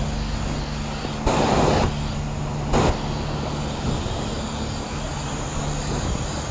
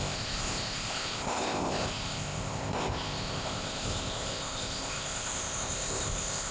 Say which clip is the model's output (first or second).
second